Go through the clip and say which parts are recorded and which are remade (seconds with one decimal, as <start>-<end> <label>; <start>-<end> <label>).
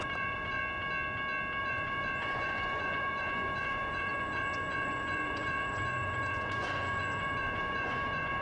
0.0-0.6 remade; 0.6-1.6 recorded; 1.6-8.4 remade